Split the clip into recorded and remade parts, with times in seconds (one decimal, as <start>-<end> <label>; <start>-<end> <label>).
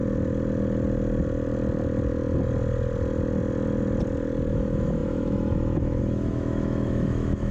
0.0-4.5 recorded; 4.5-7.5 remade